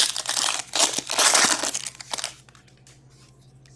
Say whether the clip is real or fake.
real